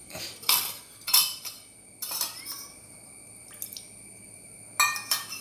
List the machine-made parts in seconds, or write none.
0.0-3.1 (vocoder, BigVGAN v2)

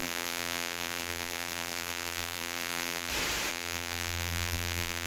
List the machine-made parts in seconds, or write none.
0.0-3.1 (vocoder, BigVGAN v2); 3.5-5.1

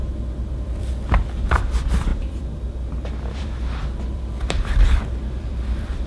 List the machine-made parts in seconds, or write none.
0.0-0.9 (vocoder, BigVGAN v2); 2.1-6.1

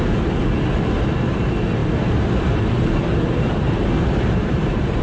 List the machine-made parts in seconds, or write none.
1.8-5.0 (vocoder, BigVGAN v2)

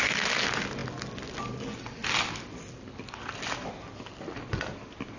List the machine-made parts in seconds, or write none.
0.8-3.9 (vocoder, BigVGAN v2)

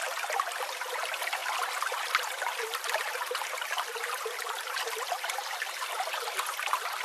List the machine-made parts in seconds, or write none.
none

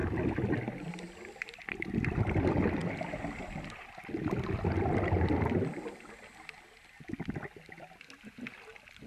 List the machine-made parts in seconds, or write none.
0.0-0.9 (vocoder, BigVGAN v2); 2.8-3.9